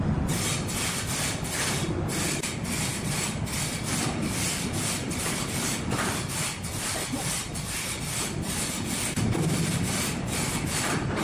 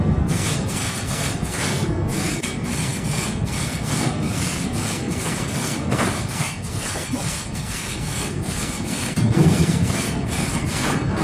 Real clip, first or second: first